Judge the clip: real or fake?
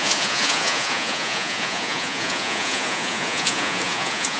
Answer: fake